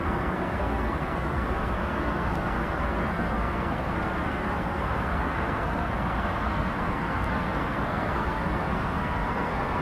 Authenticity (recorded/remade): remade